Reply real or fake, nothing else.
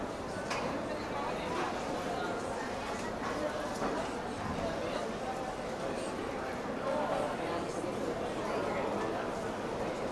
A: real